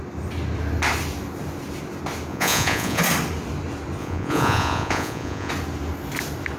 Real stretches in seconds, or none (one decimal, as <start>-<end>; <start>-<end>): 0.0-2.3; 3.0-4.0; 5.5-6.6